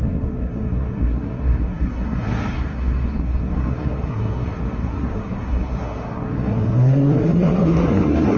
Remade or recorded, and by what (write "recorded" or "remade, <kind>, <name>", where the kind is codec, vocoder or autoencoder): remade, codec, SNAC